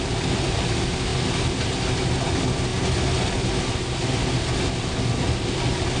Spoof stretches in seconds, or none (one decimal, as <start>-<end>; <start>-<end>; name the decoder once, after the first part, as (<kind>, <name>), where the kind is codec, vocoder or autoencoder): none